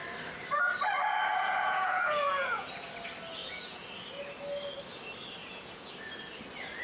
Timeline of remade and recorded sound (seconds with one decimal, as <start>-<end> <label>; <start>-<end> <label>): 0.0-1.3 recorded; 1.3-2.9 remade; 2.9-3.4 recorded; 3.4-3.9 remade; 3.9-5.4 recorded; 5.4-5.9 remade; 5.9-6.8 recorded